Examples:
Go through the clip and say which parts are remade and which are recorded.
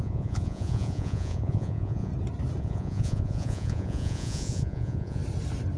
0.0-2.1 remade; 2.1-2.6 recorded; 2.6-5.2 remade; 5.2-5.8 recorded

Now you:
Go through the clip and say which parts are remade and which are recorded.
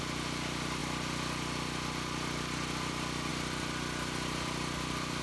0.0-5.2 recorded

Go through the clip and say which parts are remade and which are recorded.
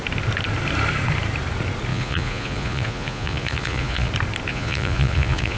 0.0-1.9 recorded; 1.9-4.1 remade; 4.1-4.5 recorded; 4.5-5.6 remade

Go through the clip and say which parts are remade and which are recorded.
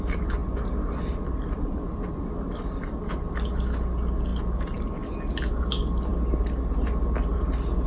0.0-7.9 recorded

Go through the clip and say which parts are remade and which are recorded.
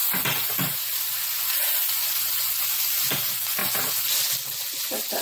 0.0-5.2 recorded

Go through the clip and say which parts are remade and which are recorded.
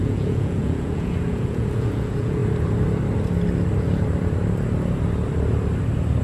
0.0-2.4 remade; 2.4-6.2 recorded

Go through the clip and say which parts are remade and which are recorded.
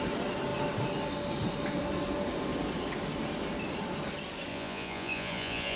0.0-4.5 recorded; 4.5-5.8 remade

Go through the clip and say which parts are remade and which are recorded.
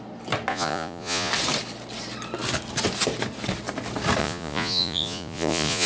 0.0-0.5 recorded; 0.5-1.3 remade; 1.3-4.2 recorded; 4.2-5.9 remade